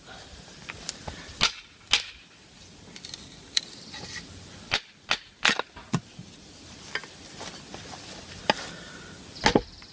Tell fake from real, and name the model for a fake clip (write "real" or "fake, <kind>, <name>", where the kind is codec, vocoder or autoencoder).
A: real